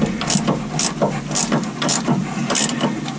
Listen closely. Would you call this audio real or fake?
real